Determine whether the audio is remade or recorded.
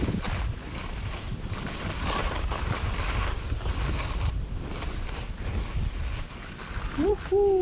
recorded